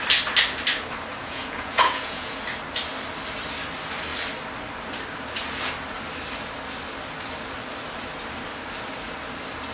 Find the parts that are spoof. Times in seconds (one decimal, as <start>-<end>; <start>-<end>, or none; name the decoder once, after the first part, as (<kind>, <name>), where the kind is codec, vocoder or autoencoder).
1.2-2.4 (vocoder, Vocos)